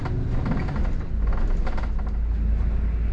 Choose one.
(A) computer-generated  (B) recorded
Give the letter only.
B